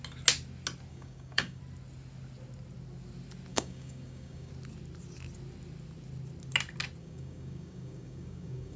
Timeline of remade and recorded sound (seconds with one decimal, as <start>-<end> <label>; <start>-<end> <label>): 0.0-0.9 recorded; 0.9-1.6 remade; 1.6-3.5 recorded; 3.5-4.5 remade; 4.5-7.0 recorded; 7.0-8.8 remade